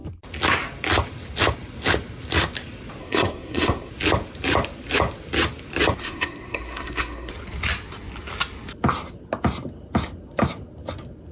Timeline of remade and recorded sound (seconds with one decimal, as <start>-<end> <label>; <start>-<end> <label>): 0.0-3.0 recorded; 3.0-3.9 remade; 3.9-6.0 recorded; 6.0-7.3 remade; 7.3-11.3 recorded